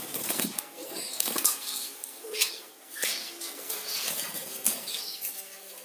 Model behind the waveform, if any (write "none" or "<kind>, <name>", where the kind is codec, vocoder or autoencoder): codec, SNAC